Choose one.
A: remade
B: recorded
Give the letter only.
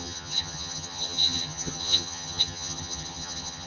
A